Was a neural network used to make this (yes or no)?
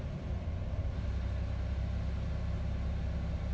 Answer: no